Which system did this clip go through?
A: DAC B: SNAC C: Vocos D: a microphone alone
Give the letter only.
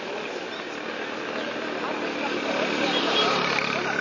D